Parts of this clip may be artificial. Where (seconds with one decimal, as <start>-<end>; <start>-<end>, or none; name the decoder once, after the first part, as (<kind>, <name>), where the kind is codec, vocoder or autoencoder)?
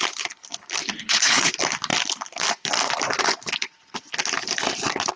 1.0-1.5 (codec, HILCodec)